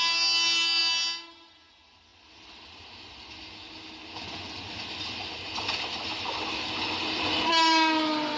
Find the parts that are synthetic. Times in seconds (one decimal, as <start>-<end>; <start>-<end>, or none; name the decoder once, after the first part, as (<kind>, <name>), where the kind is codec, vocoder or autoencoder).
none